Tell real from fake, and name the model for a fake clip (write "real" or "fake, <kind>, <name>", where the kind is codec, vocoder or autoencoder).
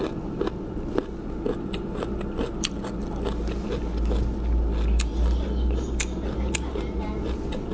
real